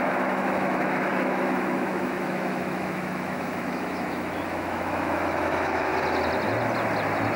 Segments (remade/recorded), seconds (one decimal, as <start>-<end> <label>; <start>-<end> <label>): 0.0-5.9 remade; 5.9-7.4 recorded